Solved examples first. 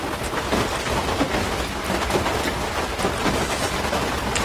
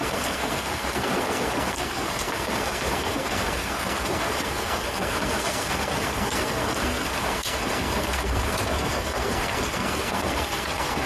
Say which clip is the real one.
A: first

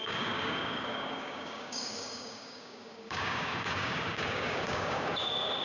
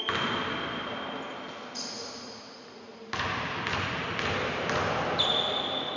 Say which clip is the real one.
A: second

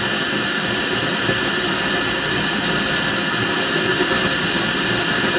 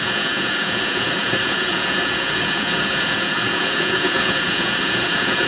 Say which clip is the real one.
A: first